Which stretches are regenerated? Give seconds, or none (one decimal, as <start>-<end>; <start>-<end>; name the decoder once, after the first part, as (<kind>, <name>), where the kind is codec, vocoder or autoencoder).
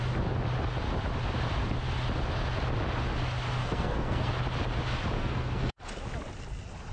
3.6-4.3 (codec, SNAC); 5.2-5.8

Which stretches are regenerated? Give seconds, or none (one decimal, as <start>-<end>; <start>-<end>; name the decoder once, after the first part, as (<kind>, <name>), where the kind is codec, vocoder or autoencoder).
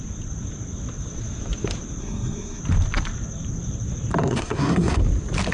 2.0-2.6 (codec, SNAC); 4.2-5.0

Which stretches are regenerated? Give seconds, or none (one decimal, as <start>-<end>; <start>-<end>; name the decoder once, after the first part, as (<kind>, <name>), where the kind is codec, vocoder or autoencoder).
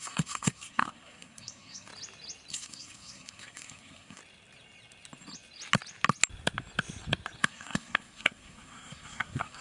0.0-1.9 (codec, SNAC); 2.5-4.2; 7.4-9.6